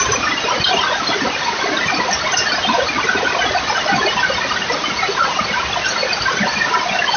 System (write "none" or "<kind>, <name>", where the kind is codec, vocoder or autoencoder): none